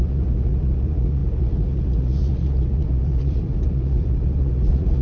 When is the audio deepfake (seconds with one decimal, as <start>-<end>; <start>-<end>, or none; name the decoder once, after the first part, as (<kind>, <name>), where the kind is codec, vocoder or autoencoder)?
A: 0.0-5.0 (vocoder, Vocos)